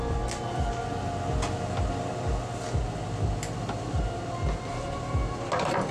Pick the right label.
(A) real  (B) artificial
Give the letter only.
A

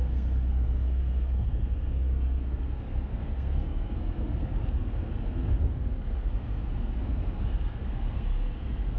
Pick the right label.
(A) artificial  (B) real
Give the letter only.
A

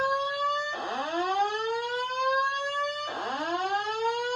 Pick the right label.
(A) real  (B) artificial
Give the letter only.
A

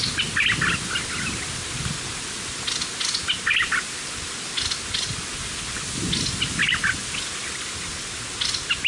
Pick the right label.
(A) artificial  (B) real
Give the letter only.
B